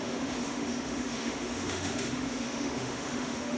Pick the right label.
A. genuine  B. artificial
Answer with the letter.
B